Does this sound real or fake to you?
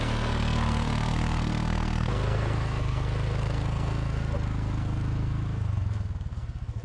fake